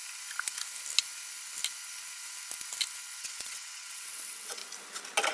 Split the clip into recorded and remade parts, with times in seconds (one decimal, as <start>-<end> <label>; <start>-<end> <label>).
0.0-3.2 recorded; 3.2-4.6 remade; 4.6-5.3 recorded